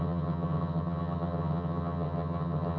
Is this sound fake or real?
fake